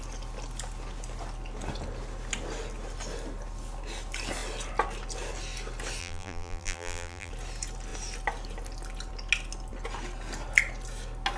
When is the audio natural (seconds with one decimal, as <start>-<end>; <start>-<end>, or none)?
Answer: 0.0-6.0; 7.3-11.4

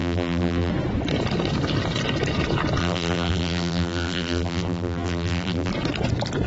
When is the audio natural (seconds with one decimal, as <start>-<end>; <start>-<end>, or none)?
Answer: 0.7-2.8; 5.7-6.5

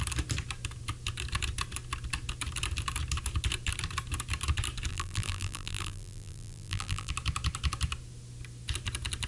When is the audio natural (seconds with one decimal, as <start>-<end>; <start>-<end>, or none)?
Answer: 0.0-4.9; 7.1-9.3

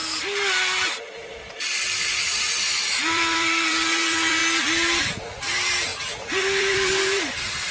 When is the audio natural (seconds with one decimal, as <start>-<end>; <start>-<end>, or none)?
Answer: 0.0-1.5; 4.4-5.0